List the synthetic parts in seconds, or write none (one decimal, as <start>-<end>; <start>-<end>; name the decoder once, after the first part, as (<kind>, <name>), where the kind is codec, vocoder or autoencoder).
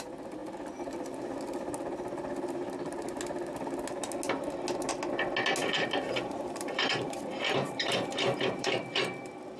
5.6-8.8 (vocoder, BigVGAN v2)